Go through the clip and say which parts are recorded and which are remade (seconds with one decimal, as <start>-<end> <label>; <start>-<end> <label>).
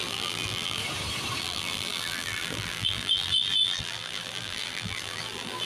0.0-0.8 remade; 0.8-1.4 recorded; 1.4-5.6 remade